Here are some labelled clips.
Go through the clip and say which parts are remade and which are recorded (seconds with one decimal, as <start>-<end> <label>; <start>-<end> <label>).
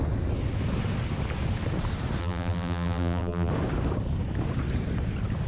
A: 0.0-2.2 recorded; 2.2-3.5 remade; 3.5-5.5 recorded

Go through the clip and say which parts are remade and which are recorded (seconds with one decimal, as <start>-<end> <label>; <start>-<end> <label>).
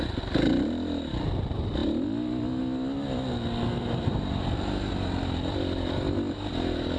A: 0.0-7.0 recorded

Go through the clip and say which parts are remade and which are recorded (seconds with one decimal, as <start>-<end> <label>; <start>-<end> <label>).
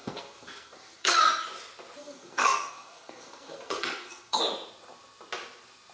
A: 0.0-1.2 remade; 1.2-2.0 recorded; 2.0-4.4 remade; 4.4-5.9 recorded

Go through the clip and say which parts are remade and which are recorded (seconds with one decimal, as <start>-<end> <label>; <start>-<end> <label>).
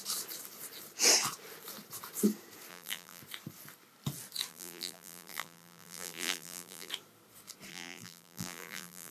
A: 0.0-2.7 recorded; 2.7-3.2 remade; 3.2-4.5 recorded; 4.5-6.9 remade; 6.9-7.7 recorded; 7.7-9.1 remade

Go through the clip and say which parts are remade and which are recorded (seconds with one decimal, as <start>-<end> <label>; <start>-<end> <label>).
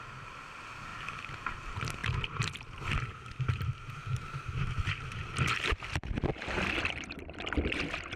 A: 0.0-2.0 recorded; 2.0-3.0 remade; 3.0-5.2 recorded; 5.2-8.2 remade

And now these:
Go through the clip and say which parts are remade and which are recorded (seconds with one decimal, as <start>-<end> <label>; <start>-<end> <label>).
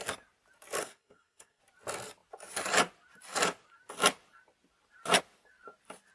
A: 0.0-0.8 recorded; 0.8-1.6 remade; 1.6-6.1 recorded